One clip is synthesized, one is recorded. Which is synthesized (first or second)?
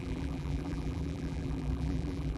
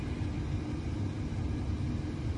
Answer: first